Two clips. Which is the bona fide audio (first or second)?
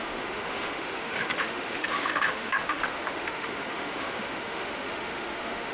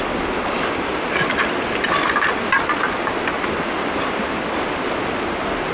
second